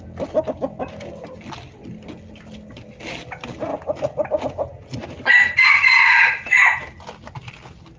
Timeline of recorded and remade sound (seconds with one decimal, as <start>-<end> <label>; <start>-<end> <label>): 0.0-8.0 recorded